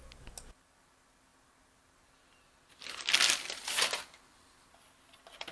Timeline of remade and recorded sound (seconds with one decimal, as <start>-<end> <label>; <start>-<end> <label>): 0.0-5.5 recorded